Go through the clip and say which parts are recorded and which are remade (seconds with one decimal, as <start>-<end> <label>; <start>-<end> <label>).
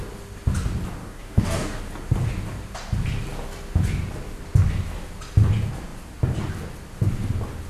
0.0-1.0 recorded; 1.0-1.9 remade; 1.9-7.7 recorded